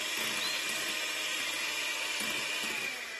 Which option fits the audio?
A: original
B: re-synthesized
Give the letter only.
A